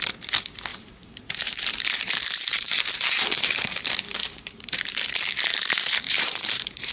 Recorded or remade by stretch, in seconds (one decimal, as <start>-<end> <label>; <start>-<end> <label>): 0.0-0.7 recorded; 0.7-2.1 remade; 2.1-2.5 recorded; 2.5-3.6 remade; 3.6-4.2 recorded; 4.2-5.0 remade; 5.0-5.5 recorded; 5.5-6.9 remade